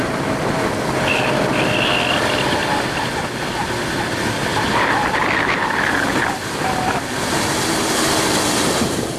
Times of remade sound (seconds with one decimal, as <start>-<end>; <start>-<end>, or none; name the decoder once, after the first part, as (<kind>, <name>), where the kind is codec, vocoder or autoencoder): none